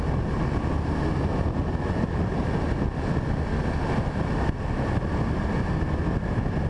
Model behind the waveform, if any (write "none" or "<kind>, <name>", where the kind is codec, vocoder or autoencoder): none